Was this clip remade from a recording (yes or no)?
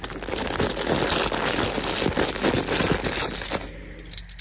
no